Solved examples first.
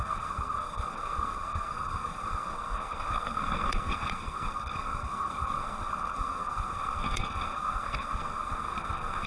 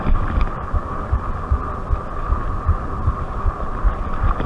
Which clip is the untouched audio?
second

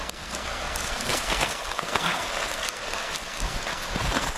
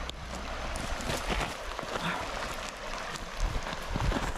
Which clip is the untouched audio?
second